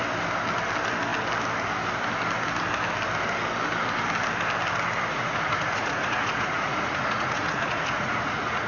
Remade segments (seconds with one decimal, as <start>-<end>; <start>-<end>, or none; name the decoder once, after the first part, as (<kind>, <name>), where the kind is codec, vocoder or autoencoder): 5.1-8.7 (vocoder, Vocos)